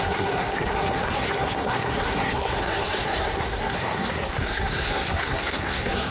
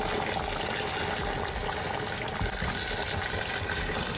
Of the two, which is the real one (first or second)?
second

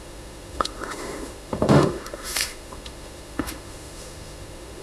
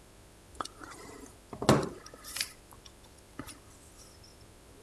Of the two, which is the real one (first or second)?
second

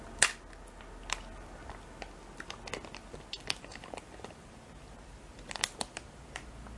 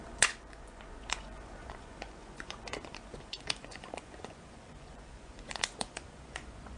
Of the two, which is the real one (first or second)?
first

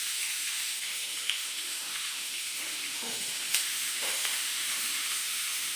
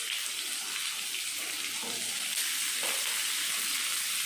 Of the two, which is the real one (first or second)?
second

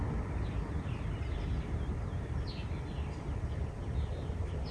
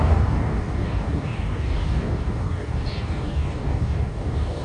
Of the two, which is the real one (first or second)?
first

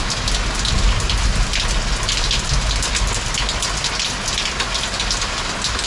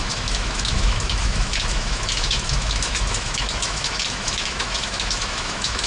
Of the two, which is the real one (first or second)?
first